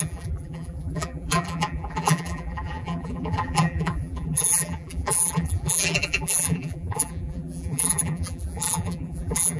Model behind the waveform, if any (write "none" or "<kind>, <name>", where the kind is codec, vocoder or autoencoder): vocoder, BigVGAN v2